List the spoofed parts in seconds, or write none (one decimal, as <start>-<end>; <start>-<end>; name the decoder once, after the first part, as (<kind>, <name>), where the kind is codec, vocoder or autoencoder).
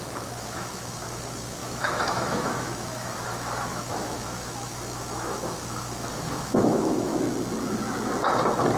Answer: 0.0-7.1 (autoencoder, DAC-VAE)